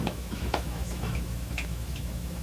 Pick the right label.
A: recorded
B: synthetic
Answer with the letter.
B